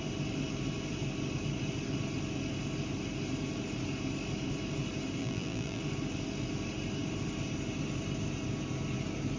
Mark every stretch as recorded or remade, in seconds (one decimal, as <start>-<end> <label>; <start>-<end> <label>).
0.0-5.2 recorded; 5.2-5.8 remade; 5.8-9.4 recorded